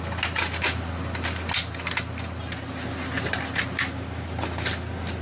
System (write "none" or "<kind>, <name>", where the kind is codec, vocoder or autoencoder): none